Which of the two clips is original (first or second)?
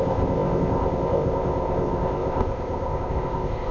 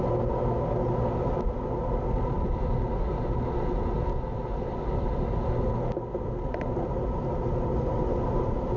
second